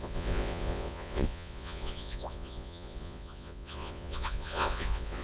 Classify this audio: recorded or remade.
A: remade